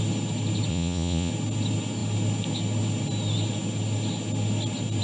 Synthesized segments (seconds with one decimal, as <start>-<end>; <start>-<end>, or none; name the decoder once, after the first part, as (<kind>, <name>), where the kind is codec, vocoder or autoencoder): 0.7-1.3 (vocoder, Vocos)